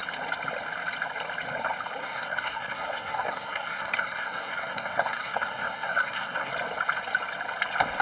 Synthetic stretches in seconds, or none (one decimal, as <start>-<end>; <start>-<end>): 2.0-6.5